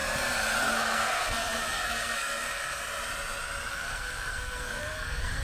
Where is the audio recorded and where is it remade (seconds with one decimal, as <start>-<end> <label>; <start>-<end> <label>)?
0.0-0.7 recorded; 0.7-2.8 remade; 2.8-3.7 recorded; 3.7-5.4 remade